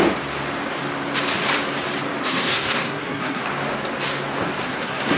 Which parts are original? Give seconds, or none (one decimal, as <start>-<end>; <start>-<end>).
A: 0.0-2.2; 3.4-4.6